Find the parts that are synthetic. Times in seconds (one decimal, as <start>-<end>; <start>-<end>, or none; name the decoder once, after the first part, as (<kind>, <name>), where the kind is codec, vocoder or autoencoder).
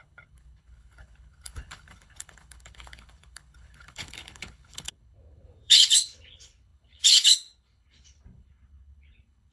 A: 0.0-9.5 (codec, HILCodec)